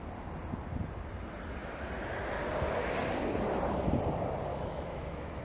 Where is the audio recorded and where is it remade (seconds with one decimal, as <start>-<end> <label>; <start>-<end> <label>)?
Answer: 0.0-4.5 recorded; 4.5-5.4 remade